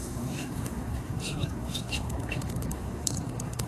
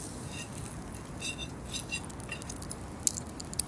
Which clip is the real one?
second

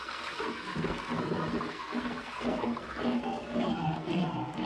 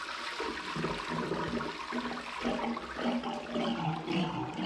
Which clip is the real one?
second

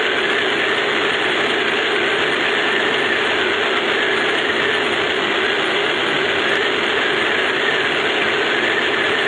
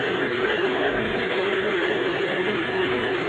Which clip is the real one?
first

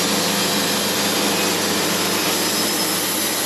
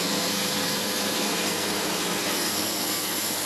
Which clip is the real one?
first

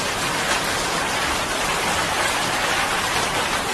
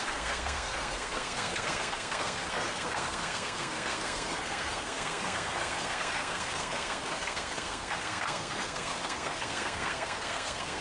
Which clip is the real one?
first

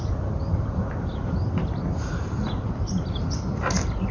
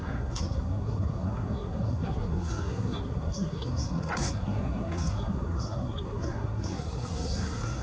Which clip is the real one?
first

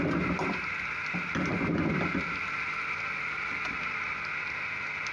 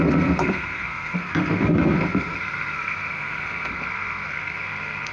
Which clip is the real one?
first